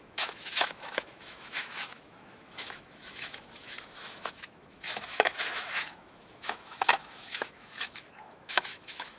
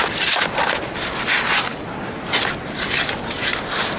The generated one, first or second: first